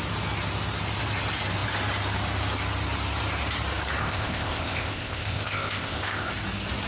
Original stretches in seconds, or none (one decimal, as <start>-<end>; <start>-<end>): 0.0-4.0; 6.3-6.9